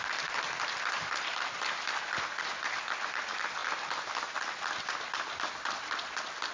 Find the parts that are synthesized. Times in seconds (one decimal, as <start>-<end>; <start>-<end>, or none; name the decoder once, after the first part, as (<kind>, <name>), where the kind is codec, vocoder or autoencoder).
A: none